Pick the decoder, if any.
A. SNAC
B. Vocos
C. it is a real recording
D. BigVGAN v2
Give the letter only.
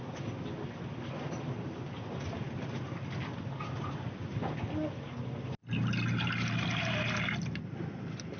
C